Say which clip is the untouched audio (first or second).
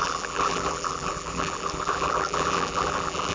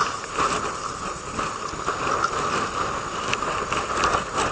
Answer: second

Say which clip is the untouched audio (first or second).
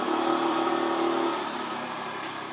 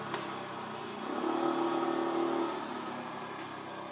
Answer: second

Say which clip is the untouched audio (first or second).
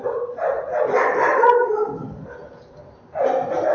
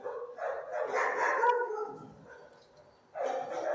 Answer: second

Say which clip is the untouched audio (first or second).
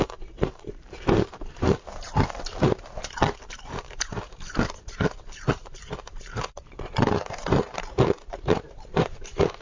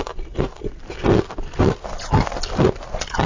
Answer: second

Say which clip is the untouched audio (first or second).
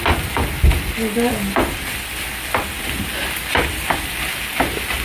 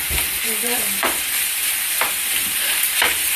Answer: first